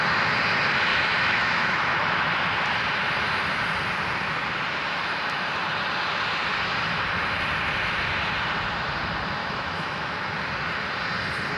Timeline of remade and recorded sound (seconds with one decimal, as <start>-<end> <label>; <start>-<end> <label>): 0.0-0.9 recorded; 0.9-2.2 remade; 2.2-9.4 recorded; 9.4-10.3 remade; 10.3-11.6 recorded